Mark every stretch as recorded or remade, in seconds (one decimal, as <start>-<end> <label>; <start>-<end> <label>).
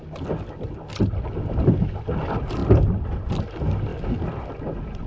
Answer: 0.0-5.1 recorded